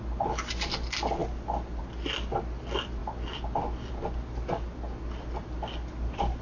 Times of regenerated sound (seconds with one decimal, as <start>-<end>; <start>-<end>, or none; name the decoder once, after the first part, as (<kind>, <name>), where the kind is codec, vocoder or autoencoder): none